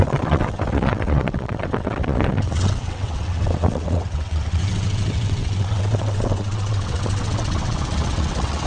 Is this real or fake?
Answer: fake